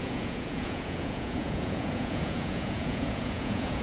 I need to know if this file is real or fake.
fake